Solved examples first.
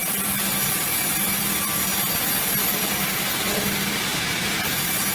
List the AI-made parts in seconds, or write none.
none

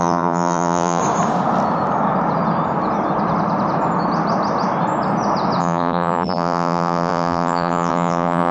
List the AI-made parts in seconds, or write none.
0.0-1.0 (vocoder, BigVGAN v2); 5.6-8.5

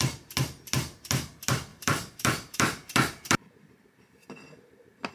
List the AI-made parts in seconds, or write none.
1.7-5.1 (vocoder, BigVGAN v2)